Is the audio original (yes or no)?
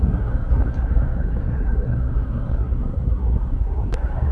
no